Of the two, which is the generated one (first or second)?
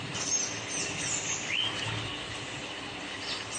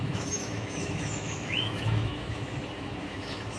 second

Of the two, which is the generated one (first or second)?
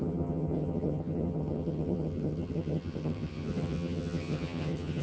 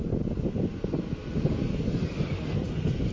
first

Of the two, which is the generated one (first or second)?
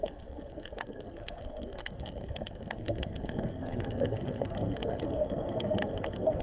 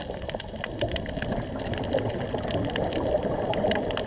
first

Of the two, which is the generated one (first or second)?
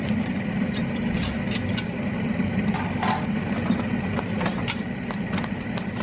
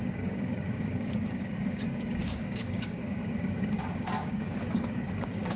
second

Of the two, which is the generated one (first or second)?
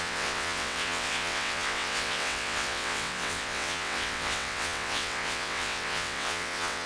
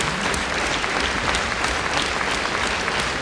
first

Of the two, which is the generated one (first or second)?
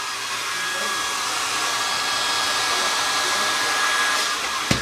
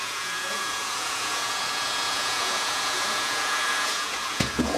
second